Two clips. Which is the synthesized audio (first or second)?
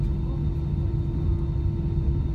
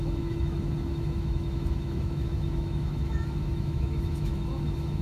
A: second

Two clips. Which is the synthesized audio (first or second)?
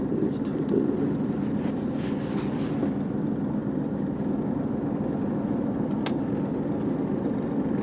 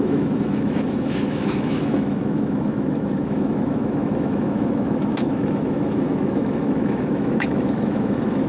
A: second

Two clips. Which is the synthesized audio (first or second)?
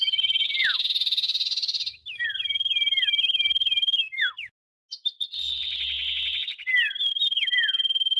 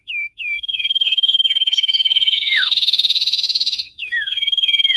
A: second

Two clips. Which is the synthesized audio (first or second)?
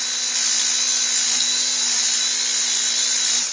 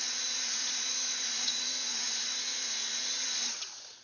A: second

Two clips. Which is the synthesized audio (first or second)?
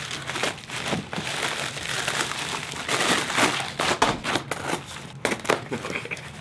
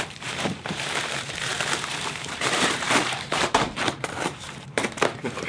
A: second